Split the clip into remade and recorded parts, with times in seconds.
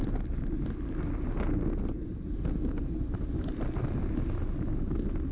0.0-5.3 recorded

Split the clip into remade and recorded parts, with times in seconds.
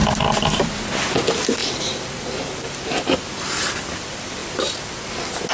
0.0-5.5 recorded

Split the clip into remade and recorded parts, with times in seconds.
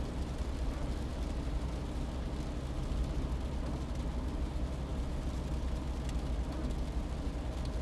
0.0-7.8 recorded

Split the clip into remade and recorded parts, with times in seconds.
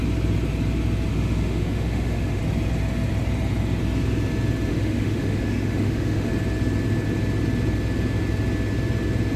0.0-1.1 recorded; 1.1-2.4 remade; 2.4-4.7 recorded; 4.7-6.3 remade; 6.3-9.4 recorded